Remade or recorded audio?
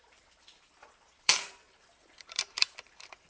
remade